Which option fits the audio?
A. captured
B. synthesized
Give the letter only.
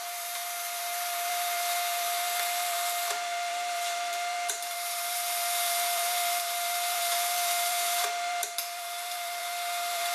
B